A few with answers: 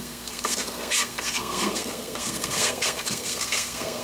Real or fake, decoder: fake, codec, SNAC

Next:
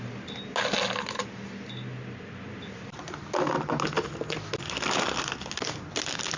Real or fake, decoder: real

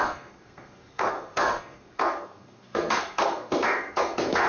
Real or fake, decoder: fake, codec, SNAC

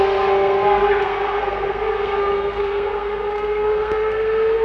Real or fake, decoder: fake, codec, SNAC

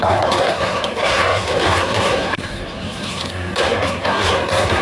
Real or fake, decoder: fake, codec, SNAC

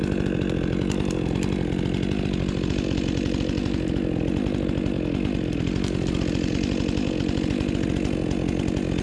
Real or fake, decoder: real